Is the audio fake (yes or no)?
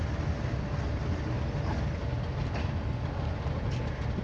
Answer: no